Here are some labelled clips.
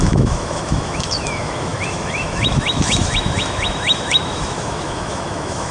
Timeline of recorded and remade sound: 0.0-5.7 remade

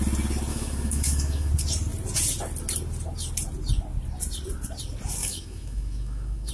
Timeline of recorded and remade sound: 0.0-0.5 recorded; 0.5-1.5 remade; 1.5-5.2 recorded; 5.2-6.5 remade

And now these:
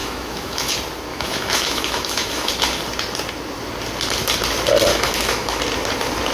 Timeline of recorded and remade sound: 0.0-0.7 remade; 0.7-1.1 recorded; 1.1-2.5 remade; 2.5-4.9 recorded; 4.9-5.6 remade; 5.6-6.3 recorded